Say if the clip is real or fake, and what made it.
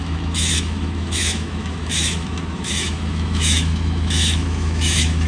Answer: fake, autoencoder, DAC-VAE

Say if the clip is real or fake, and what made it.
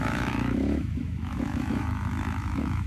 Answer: fake, autoencoder, DAC-VAE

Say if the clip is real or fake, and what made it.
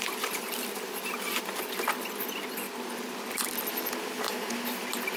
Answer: real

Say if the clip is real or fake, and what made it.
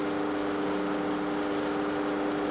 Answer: real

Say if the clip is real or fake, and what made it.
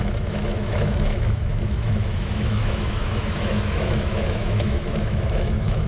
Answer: fake, autoencoder, DAC-VAE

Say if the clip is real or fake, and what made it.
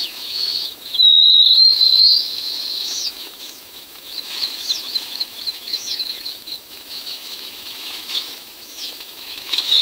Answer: fake, autoencoder, DAC-VAE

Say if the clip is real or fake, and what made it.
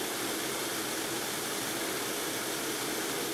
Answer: real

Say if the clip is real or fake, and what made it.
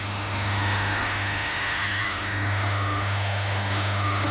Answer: fake, autoencoder, DAC-VAE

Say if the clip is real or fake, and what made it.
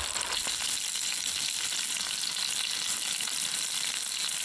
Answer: real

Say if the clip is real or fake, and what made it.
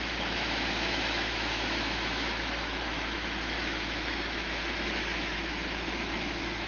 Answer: fake, autoencoder, DAC-VAE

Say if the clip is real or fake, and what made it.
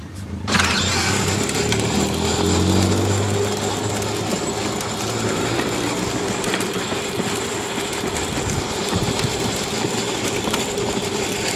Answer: real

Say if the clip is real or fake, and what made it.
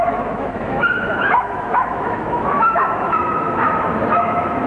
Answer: fake, autoencoder, DAC-VAE